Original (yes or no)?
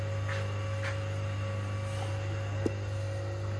yes